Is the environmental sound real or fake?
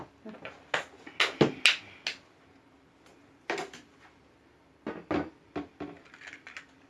real